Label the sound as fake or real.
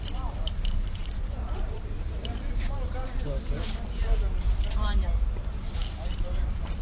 fake